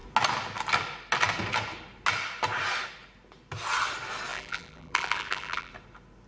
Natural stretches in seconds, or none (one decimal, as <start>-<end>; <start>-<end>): 0.0-4.3; 5.7-6.3